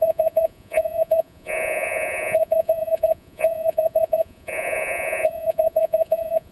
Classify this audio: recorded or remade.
remade